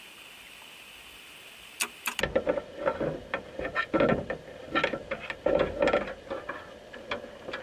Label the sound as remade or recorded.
recorded